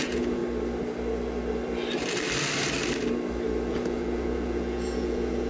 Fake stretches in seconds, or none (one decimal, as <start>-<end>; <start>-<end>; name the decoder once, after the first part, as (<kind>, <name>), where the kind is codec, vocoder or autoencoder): 0.0-0.4 (vocoder, Vocos); 3.7-5.5